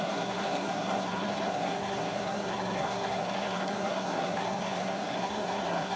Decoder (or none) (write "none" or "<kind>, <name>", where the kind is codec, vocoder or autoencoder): codec, SNAC